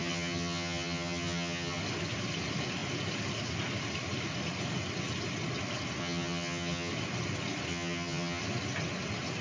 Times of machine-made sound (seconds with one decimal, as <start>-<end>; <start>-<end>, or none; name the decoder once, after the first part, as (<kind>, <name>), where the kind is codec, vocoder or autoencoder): 0.0-1.8 (vocoder, HiFi-GAN); 6.0-6.9; 7.7-8.4